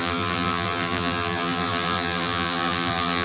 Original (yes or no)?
no